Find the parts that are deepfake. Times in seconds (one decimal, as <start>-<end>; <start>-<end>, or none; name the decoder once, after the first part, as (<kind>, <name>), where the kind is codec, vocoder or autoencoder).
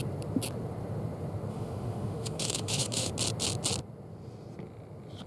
1.5-3.1 (autoencoder, DAC-VAE)